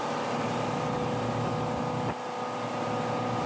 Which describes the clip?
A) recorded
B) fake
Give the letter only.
A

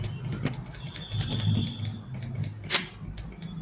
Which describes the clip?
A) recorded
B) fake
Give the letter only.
A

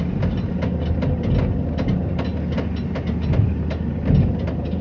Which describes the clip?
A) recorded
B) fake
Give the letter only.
A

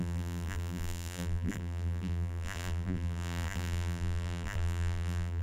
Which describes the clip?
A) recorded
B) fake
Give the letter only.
B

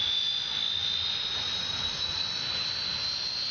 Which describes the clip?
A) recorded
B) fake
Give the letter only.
B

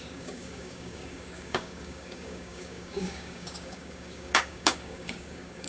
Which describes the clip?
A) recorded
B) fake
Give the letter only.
B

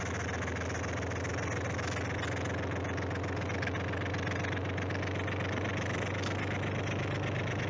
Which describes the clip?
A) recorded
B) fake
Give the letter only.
A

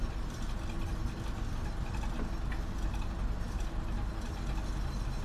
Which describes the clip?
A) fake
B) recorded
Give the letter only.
B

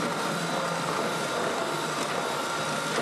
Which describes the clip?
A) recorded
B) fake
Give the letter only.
A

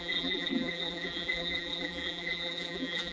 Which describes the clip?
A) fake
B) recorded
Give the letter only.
A